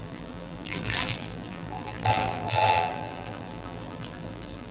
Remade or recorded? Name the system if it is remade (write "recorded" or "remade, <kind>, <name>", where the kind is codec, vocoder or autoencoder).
remade, vocoder, BigVGAN v2